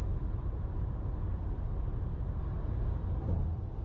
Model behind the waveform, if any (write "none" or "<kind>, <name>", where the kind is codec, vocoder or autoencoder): none